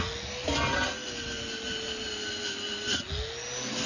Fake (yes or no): no